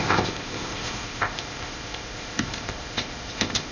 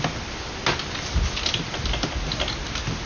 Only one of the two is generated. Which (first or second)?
first